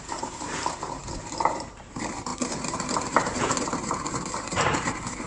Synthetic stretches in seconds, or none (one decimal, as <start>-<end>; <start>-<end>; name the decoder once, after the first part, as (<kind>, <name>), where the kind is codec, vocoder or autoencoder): 0.0-5.3 (vocoder, BigVGAN v2)